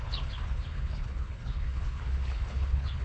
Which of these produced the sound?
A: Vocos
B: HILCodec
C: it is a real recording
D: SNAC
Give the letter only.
B